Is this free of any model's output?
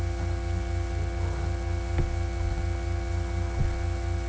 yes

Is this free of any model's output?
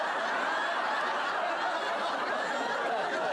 yes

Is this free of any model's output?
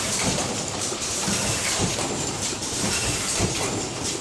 no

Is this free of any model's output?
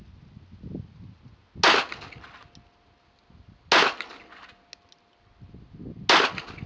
yes